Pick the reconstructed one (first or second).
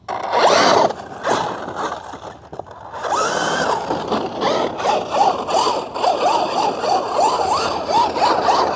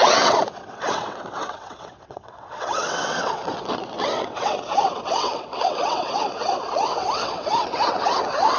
second